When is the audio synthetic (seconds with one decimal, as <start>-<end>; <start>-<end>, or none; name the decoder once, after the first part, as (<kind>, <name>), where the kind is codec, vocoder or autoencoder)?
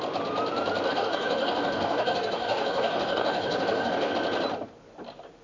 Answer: 0.9-4.1 (codec, DAC)